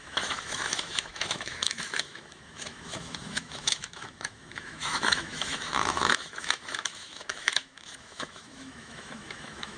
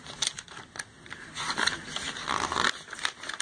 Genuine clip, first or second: second